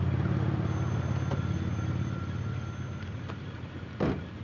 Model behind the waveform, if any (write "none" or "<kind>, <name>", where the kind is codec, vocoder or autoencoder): none